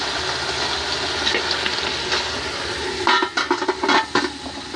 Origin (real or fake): real